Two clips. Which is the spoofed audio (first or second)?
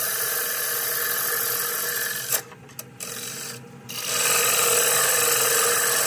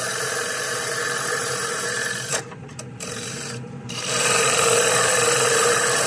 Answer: second